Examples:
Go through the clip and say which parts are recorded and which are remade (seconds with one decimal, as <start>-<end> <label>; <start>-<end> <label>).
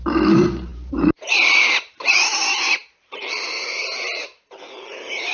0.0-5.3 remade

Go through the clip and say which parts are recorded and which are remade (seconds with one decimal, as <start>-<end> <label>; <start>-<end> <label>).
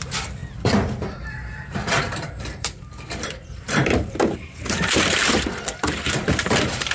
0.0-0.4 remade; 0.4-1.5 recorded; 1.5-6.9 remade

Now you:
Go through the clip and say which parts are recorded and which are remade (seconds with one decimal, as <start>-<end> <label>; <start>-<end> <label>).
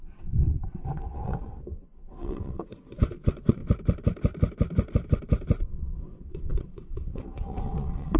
0.0-3.6 remade; 3.6-5.6 recorded; 5.6-8.2 remade